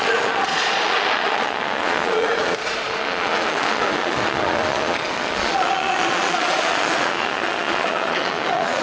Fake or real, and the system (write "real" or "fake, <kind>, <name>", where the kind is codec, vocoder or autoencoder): fake, vocoder, Vocos